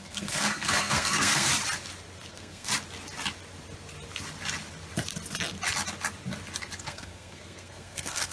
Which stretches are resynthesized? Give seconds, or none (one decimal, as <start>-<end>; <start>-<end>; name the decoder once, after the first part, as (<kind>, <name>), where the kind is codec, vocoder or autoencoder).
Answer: 0.0-1.5 (codec, SNAC); 2.3-2.7; 6.8-8.3